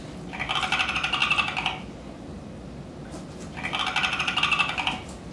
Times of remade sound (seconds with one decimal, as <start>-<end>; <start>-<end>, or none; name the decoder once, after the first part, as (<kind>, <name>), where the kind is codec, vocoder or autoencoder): none